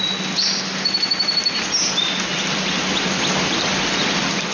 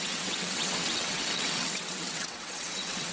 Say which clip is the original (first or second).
first